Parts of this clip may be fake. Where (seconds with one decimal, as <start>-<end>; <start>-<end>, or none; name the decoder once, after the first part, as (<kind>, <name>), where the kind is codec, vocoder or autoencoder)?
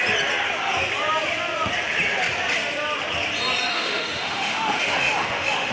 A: 3.7-5.7 (autoencoder, DAC-VAE)